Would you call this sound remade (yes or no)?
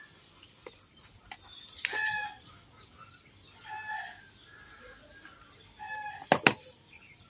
no